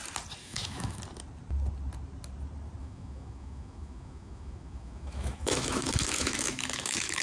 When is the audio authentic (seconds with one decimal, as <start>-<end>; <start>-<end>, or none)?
0.0-0.4; 1.0-2.8